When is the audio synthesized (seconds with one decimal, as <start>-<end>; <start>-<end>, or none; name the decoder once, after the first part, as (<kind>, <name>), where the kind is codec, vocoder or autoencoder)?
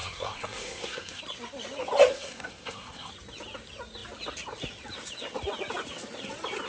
0.0-1.2 (codec, SNAC); 2.1-3.1